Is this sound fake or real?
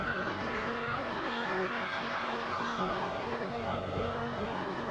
fake